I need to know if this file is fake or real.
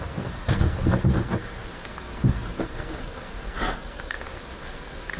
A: fake